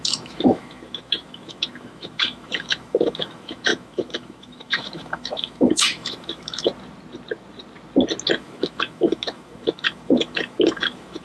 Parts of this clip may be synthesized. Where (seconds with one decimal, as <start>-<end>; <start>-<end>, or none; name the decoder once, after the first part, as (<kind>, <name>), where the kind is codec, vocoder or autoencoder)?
0.0-6.7 (autoencoder, DAC-VAE); 8.3-11.2